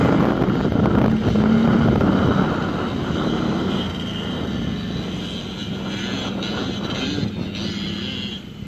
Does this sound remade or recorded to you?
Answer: recorded